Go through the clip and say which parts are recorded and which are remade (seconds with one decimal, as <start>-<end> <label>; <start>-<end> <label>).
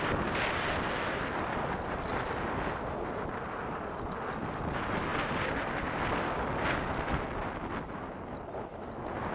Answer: 0.0-9.3 recorded